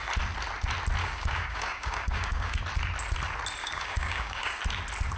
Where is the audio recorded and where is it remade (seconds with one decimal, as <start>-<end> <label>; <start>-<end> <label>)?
0.0-1.0 recorded; 1.0-2.6 remade; 2.6-3.6 recorded; 3.6-4.6 remade; 4.6-5.2 recorded